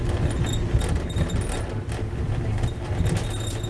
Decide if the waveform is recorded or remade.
recorded